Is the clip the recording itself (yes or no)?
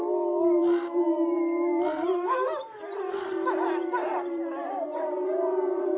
no